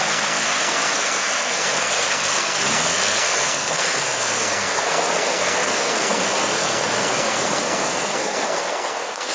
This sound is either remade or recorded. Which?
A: remade